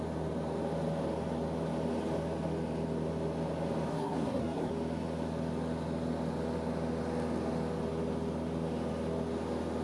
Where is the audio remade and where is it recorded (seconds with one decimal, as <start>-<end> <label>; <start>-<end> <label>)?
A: 0.0-3.9 recorded; 3.9-4.7 remade; 4.7-9.8 recorded